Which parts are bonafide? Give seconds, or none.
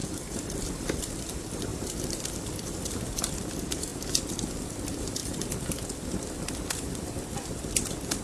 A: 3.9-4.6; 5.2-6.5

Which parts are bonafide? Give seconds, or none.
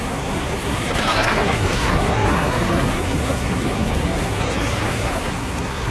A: none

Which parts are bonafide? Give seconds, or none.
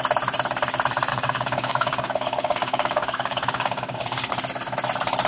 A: 0.0-1.1; 4.3-5.3